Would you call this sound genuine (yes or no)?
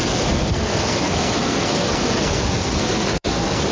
no